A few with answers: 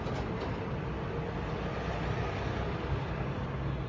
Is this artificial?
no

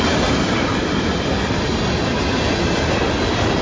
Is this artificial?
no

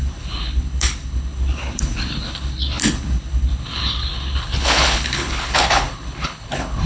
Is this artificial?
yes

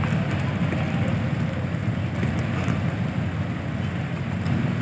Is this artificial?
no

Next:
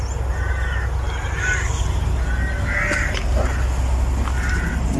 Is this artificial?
no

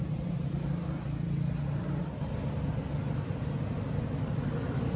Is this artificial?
no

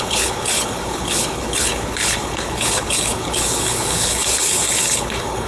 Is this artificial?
yes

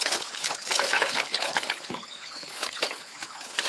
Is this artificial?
yes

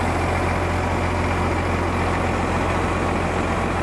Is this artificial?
no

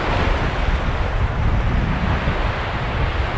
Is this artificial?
no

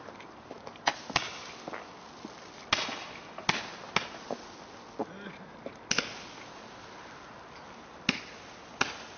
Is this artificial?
no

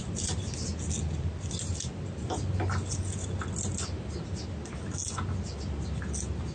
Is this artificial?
no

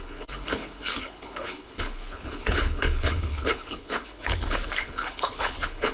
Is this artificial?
yes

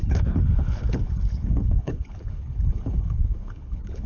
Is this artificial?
yes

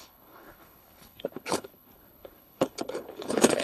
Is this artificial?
yes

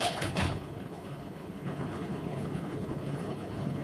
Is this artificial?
yes